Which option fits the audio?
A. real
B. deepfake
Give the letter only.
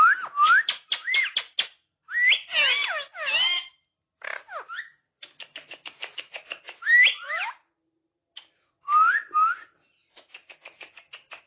A